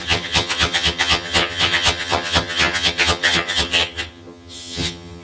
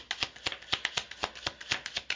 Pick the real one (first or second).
second